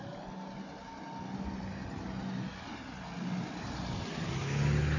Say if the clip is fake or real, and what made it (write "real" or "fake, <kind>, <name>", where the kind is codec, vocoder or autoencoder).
real